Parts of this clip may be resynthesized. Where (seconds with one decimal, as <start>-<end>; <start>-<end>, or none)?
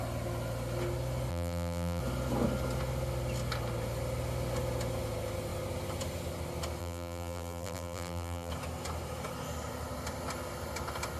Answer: 1.3-2.0; 6.8-8.5